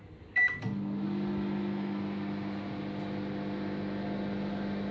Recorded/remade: recorded